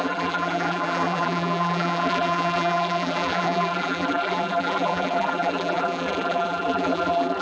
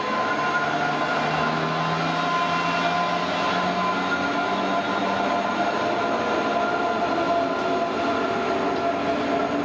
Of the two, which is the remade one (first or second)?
first